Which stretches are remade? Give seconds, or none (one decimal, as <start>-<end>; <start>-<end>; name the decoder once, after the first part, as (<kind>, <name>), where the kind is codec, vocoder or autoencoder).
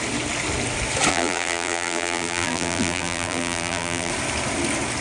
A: 1.1-4.1 (vocoder, BigVGAN v2)